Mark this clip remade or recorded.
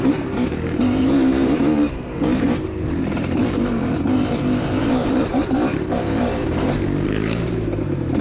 remade